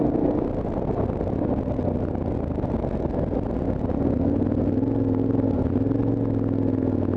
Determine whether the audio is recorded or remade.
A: recorded